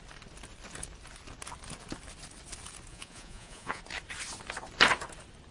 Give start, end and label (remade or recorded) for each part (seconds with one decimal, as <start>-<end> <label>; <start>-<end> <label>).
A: 0.0-2.9 recorded; 2.9-3.8 remade; 3.8-5.5 recorded